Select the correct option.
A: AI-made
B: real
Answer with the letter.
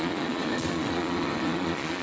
A